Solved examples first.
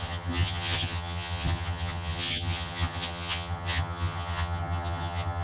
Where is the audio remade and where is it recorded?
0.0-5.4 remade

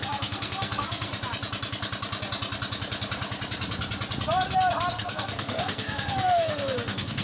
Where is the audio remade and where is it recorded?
0.0-1.1 remade; 1.1-4.9 recorded; 4.9-7.2 remade

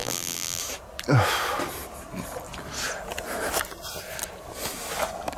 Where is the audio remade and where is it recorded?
0.0-0.6 remade; 0.6-5.4 recorded

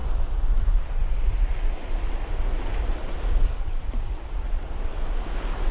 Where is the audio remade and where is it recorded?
0.0-3.4 recorded; 3.4-3.9 remade; 3.9-5.7 recorded

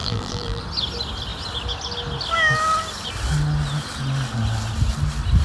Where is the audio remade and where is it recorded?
0.0-0.6 remade; 0.6-5.4 recorded

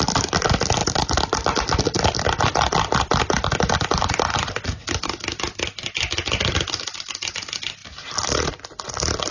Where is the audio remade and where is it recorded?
0.0-9.3 recorded